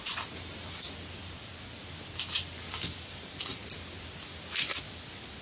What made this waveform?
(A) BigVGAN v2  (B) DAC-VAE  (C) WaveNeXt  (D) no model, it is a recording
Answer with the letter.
D